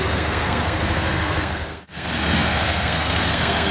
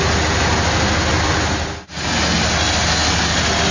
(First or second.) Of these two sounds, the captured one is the second